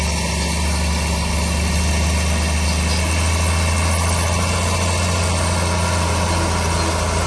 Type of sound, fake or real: real